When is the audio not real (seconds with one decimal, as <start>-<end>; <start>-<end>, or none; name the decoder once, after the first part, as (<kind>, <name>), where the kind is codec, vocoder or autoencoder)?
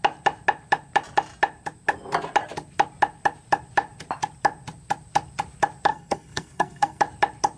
5.9-7.0 (codec, SNAC)